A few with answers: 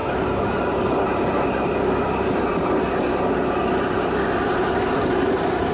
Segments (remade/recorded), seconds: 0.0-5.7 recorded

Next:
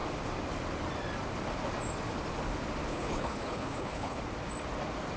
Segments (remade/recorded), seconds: 0.0-2.9 recorded; 2.9-4.2 remade; 4.2-5.2 recorded

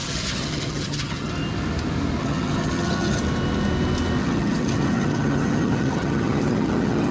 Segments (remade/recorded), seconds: 0.0-1.3 remade; 1.3-2.2 recorded; 2.2-3.2 remade; 3.2-4.2 recorded; 4.2-7.1 remade